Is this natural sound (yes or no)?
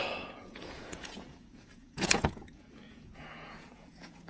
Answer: no